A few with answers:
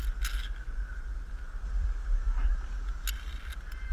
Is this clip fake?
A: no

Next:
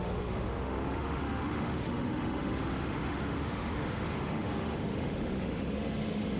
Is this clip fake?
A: yes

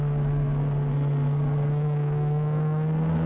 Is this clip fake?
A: yes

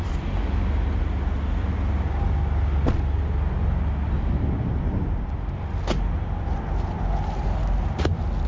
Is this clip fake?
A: no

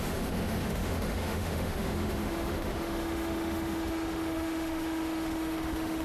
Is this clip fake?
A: yes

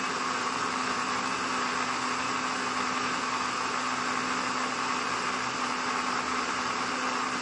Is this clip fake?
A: no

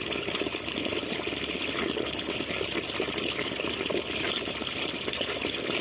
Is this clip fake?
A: no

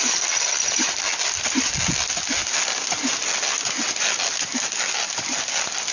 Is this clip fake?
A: no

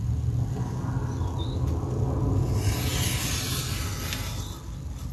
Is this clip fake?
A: no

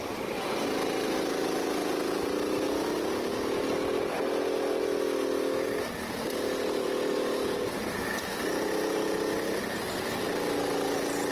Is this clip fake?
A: no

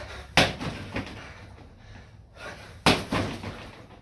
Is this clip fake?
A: no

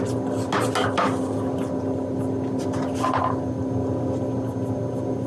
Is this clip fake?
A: no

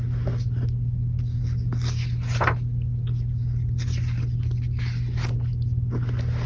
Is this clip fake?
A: no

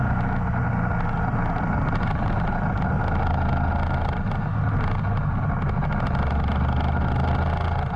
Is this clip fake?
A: no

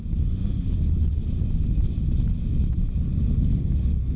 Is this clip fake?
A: no